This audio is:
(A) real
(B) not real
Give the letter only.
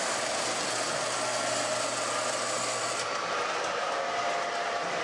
A